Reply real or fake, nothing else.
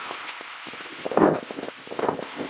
fake